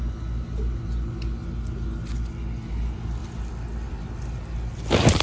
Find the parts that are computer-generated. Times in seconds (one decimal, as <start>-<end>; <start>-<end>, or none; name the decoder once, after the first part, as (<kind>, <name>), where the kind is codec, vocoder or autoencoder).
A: none